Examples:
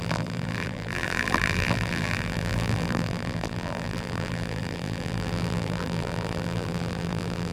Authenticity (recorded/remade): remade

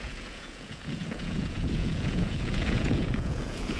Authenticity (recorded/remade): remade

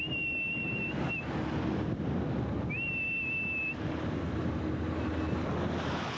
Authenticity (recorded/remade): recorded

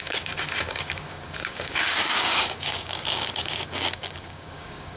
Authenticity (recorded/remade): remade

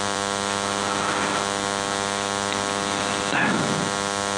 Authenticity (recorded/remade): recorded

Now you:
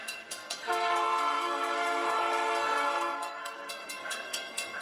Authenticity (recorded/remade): remade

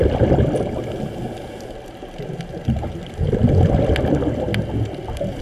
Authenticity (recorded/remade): recorded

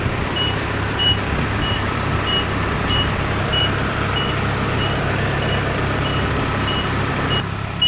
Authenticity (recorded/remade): remade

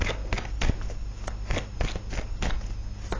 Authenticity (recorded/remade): recorded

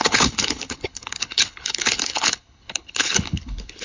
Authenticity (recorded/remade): remade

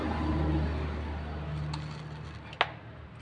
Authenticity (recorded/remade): recorded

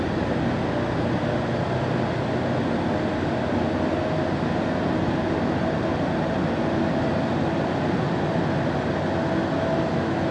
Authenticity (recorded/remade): recorded